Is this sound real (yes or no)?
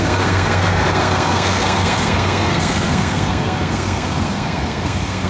no